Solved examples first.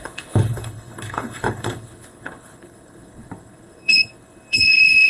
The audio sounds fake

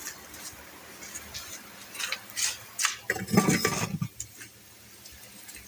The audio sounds real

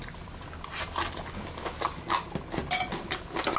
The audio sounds real